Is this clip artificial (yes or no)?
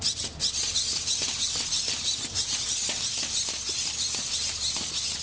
no